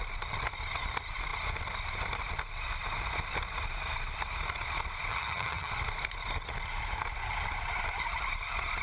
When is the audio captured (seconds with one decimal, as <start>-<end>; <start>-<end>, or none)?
0.0-5.1; 5.7-8.8